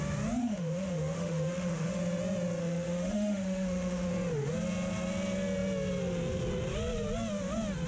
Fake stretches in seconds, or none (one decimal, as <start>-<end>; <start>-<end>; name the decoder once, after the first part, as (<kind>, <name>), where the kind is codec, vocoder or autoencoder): 0.4-2.0 (autoencoder, DAC-VAE); 2.6-4.1